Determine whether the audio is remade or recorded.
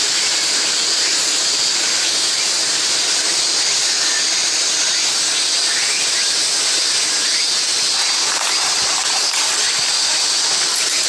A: recorded